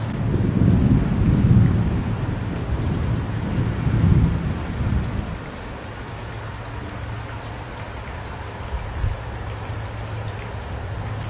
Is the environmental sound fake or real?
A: real